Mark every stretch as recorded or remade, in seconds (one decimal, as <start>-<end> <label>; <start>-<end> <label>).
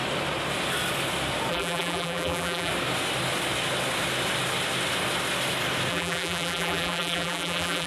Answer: 0.0-1.5 recorded; 1.5-2.7 remade; 2.7-5.9 recorded; 5.9-7.9 remade